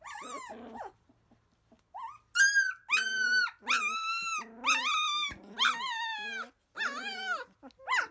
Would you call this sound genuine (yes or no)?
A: yes